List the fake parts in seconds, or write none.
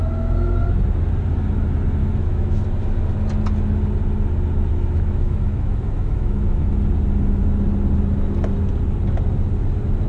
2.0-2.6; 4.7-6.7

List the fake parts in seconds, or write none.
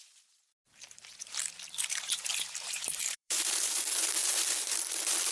0.0-2.3; 3.0-5.3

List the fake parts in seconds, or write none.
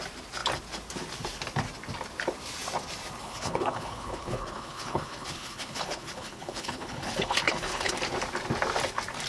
3.2-7.9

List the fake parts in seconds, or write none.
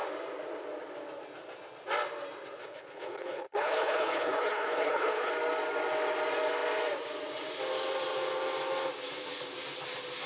2.6-5.3